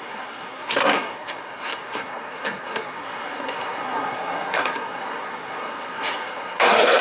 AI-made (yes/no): yes